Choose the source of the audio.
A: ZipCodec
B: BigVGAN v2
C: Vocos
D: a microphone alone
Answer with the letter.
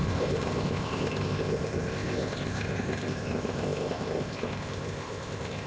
A